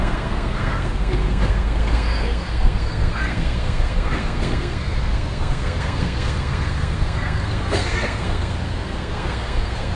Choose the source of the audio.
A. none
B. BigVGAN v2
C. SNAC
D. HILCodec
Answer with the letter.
C